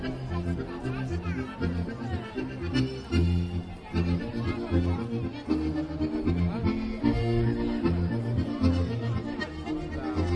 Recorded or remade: recorded